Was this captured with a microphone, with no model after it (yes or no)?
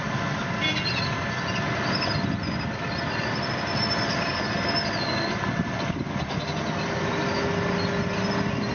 yes